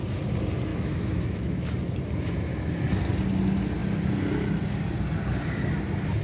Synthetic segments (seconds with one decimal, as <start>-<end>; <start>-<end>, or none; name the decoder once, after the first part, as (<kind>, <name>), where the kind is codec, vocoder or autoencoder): 0.7-1.7 (autoencoder, DAC-VAE)